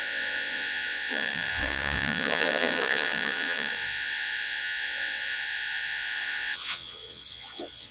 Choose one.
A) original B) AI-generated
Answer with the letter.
B